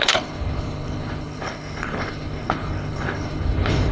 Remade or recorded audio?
remade